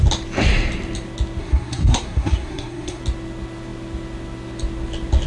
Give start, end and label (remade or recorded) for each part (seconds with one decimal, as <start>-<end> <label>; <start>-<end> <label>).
0.0-1.4 recorded; 1.4-3.0 remade; 3.0-5.3 recorded